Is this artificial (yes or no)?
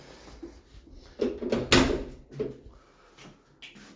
no